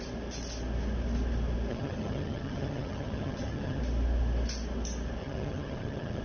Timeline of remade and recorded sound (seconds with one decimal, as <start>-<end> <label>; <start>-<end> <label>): 0.0-1.7 recorded; 1.7-3.8 remade; 3.8-5.2 recorded; 5.2-6.2 remade